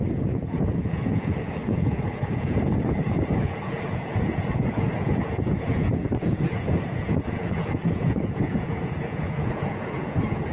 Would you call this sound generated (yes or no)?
yes